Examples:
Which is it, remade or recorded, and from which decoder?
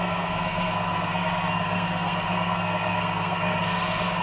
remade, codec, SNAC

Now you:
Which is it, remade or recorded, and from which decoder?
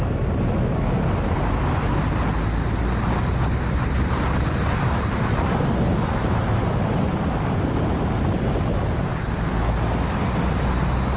recorded